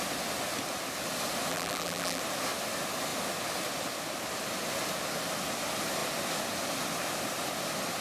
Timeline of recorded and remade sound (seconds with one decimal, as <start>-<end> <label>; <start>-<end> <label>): 0.0-1.5 recorded; 1.5-2.2 remade; 2.2-8.0 recorded